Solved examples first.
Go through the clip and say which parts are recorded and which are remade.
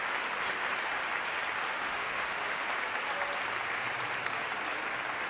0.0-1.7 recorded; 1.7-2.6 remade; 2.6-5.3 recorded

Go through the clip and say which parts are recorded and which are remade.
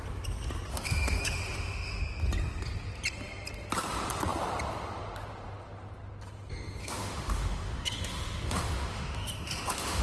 0.0-0.7 recorded; 0.7-2.0 remade; 2.0-6.8 recorded; 6.8-10.0 remade